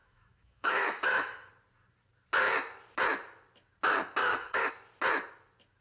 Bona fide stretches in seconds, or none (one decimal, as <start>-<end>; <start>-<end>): 1.5-4.2; 4.7-5.8